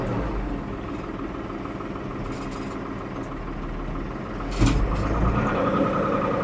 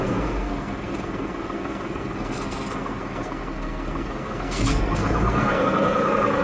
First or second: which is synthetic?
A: second